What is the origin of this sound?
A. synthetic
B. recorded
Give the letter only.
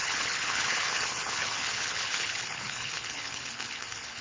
A